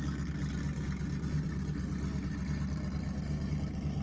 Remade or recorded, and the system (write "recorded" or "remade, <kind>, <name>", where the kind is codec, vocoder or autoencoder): recorded